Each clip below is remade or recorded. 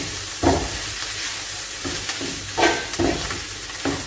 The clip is recorded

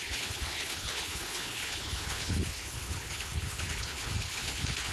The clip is remade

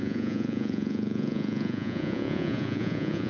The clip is remade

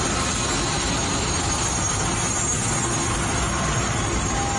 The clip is recorded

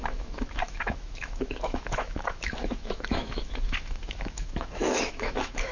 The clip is remade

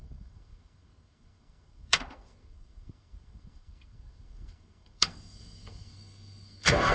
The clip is remade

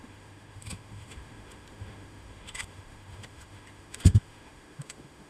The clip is remade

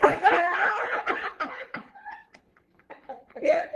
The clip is remade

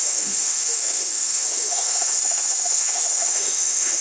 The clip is remade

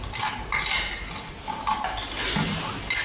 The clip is recorded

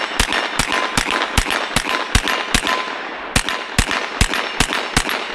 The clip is recorded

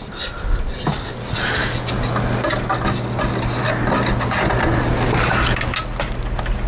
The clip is recorded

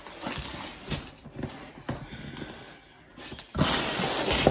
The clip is recorded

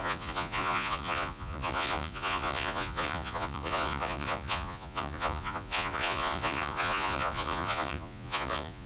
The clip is remade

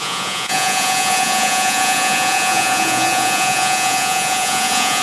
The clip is remade